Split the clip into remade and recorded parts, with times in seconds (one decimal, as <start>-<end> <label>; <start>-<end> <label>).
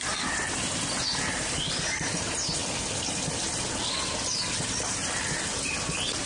0.0-1.3 recorded; 1.3-2.2 remade; 2.2-2.6 recorded; 2.6-4.0 remade; 4.0-6.3 recorded